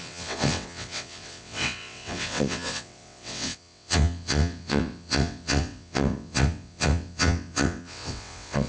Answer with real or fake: fake